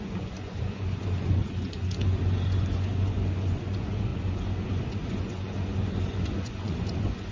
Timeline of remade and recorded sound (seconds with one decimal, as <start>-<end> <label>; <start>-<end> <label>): 0.0-7.3 remade